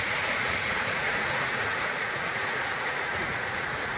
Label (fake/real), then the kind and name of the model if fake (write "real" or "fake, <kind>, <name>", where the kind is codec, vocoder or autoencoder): fake, vocoder, Vocos